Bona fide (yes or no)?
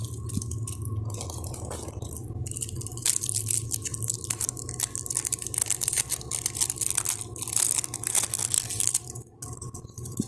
yes